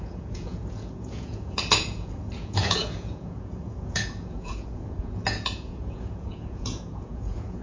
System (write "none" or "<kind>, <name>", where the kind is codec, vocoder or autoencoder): vocoder, Vocos